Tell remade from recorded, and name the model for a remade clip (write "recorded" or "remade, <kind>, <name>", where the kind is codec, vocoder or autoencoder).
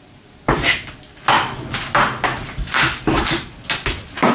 recorded